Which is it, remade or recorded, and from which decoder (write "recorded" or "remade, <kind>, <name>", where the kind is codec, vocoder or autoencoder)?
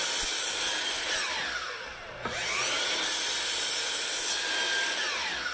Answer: recorded